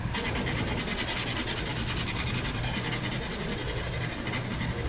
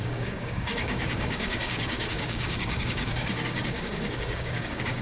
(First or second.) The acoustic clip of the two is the first